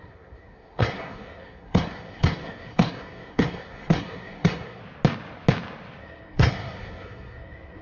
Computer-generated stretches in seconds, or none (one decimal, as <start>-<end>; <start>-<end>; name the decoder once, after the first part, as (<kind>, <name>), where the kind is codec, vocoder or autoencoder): 0.0-4.8 (codec, SNAC); 6.0-7.8